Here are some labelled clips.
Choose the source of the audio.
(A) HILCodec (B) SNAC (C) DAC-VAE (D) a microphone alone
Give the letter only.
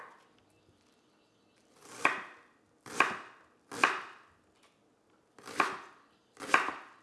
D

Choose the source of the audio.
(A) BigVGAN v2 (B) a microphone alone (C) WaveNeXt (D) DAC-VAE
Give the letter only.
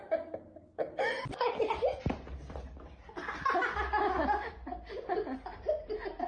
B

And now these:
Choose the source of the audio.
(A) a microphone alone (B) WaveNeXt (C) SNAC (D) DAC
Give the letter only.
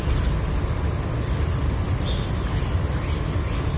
A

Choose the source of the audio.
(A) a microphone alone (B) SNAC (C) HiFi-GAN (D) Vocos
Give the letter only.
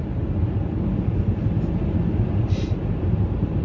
A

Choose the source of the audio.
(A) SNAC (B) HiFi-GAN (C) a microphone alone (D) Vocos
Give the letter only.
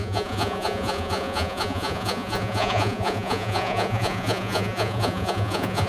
D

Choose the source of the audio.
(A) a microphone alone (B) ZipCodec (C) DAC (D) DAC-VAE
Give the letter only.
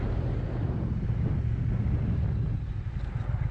A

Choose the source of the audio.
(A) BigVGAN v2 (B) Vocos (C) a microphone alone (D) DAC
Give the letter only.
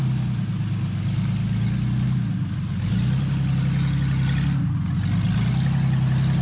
C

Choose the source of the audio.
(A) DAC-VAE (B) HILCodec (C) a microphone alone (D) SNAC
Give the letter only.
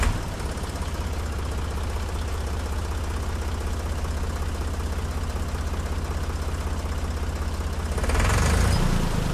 C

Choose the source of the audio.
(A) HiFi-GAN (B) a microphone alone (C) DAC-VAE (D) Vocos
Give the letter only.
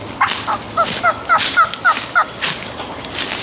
B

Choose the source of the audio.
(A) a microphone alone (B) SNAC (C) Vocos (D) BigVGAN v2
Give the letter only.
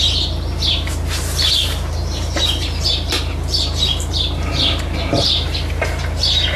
D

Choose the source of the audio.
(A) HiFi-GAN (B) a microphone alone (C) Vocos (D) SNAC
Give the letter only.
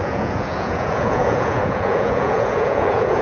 C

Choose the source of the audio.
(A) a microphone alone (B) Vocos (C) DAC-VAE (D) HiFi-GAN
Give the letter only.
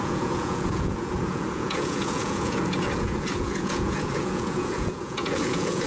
B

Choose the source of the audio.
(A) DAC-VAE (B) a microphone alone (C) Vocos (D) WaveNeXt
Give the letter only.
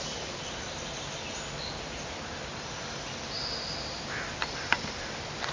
B